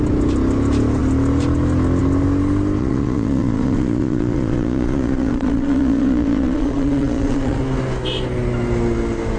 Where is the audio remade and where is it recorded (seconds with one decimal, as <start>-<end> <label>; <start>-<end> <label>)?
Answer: 0.0-2.8 recorded; 2.8-7.6 remade; 7.6-9.4 recorded